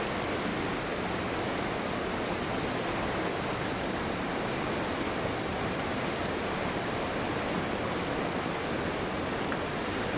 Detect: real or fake real